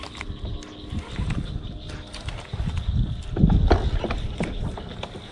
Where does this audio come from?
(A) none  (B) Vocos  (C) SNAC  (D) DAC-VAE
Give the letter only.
A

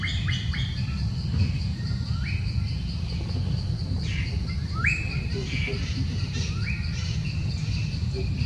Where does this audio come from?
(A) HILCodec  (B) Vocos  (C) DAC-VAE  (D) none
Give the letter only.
D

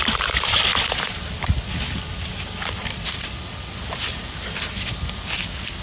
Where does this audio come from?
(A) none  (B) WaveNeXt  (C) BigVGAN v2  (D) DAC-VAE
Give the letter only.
A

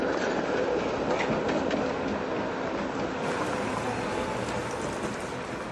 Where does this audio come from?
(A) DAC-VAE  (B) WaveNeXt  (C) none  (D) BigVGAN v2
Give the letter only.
C